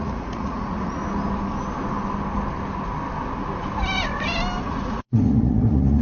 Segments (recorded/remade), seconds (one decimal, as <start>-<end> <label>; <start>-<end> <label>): 0.0-1.0 remade; 1.0-4.6 recorded; 4.6-6.0 remade